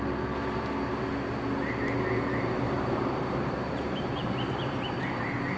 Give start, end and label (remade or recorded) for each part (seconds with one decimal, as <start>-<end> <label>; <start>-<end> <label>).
0.0-2.3 recorded; 2.3-5.0 remade; 5.0-5.6 recorded